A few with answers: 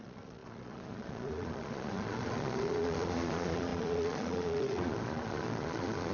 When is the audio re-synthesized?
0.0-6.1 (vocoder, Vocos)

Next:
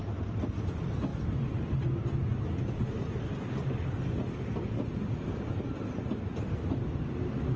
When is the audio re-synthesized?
none

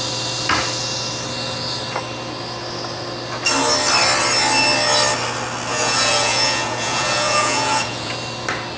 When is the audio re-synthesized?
5.7-8.1 (vocoder, Vocos)

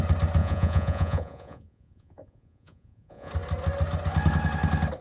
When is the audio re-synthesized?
0.4-3.3 (vocoder, Vocos)

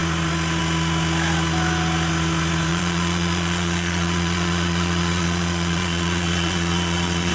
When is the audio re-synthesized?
2.7-7.3 (vocoder, Vocos)

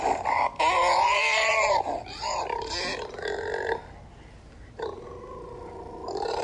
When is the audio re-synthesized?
none